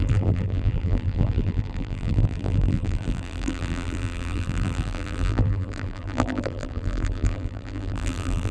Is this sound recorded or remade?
remade